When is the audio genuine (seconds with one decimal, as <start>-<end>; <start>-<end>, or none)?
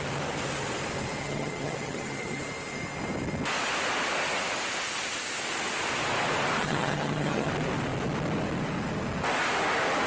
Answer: 0.0-1.2; 2.4-6.6; 7.5-10.1